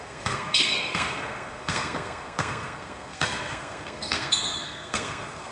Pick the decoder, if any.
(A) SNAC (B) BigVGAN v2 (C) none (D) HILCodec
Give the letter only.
A